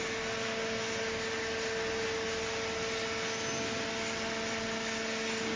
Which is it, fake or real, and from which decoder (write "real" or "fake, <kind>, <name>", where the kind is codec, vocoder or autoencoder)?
real